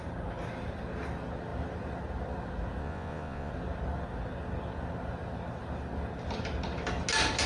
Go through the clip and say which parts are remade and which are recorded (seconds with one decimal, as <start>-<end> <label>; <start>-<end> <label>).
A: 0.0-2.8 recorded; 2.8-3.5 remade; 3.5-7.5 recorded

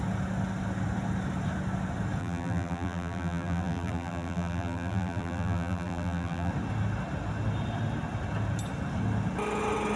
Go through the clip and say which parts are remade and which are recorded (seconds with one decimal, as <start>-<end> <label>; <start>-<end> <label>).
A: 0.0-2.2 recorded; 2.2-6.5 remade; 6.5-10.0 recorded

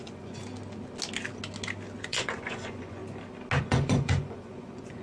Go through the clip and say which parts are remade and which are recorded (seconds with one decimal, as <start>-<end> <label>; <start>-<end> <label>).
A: 0.0-0.4 remade; 0.4-2.0 recorded; 2.0-3.0 remade; 3.0-3.6 recorded; 3.6-5.0 remade